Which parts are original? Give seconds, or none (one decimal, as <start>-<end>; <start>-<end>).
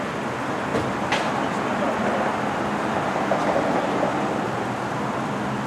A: 0.0-5.7